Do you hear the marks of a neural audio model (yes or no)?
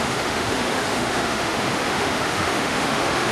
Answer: yes